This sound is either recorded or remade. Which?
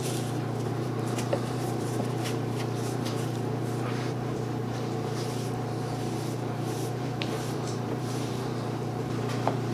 remade